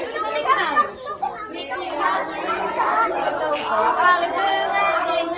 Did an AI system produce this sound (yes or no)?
no